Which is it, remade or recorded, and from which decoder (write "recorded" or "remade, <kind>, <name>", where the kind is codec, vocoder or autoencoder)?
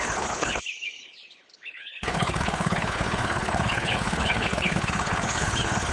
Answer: remade, codec, HILCodec